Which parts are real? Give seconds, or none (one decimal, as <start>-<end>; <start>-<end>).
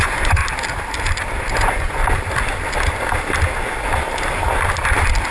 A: 0.4-1.5; 2.0-5.3